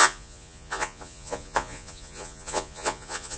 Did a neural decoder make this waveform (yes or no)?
yes